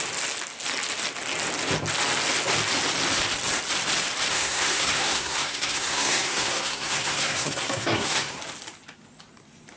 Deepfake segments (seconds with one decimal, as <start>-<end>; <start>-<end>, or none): 4.3-8.4

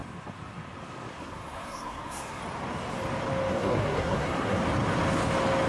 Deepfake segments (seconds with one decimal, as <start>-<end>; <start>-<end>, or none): 1.2-2.4; 3.5-4.6

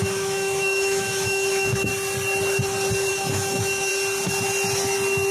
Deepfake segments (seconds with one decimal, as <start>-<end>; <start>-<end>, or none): 0.0-1.9; 3.1-3.9

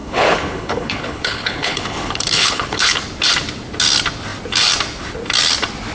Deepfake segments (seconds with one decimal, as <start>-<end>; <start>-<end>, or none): 0.0-3.0

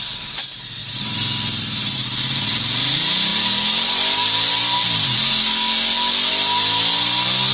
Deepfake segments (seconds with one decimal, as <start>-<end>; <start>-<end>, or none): none